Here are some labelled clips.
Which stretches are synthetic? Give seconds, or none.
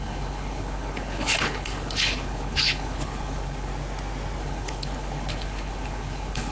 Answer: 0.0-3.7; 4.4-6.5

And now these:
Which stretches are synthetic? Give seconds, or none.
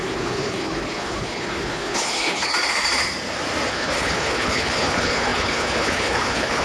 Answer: 0.0-2.5; 3.7-6.6